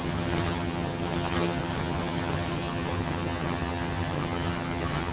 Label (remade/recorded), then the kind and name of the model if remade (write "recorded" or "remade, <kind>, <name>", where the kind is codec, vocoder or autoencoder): remade, vocoder, HiFi-GAN